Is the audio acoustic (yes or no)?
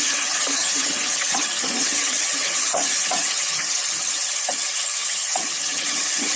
no